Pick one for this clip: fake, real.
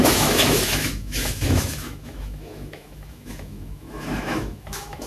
fake